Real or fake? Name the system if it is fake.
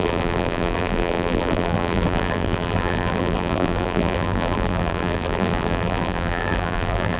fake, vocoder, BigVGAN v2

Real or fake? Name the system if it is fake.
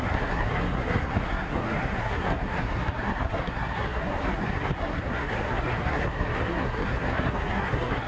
fake, codec, SNAC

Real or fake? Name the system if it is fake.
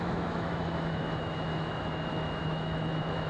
fake, autoencoder, DAC-VAE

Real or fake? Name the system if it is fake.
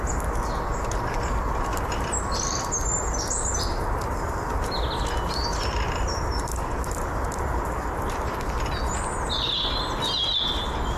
real